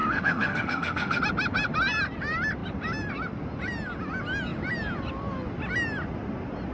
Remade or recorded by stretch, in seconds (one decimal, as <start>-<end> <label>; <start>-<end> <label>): 0.0-1.2 remade; 1.2-6.7 recorded